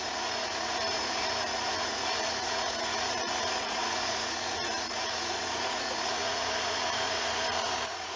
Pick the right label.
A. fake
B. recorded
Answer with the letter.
A